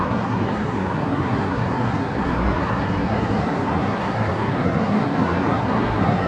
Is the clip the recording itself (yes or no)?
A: no